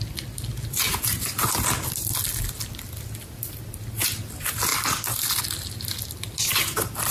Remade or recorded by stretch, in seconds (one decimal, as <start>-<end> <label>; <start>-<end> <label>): 0.0-7.1 recorded